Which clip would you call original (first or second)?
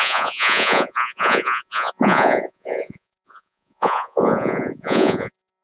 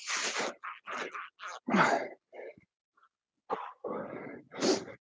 second